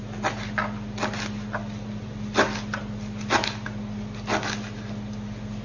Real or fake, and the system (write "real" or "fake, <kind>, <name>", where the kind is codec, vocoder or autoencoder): real